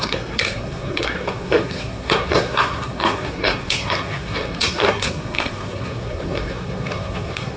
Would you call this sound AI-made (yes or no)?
yes